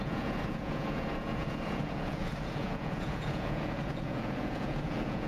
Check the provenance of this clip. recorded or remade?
remade